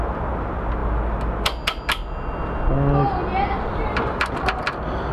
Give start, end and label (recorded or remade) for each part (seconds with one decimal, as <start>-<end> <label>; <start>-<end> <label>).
0.0-5.1 recorded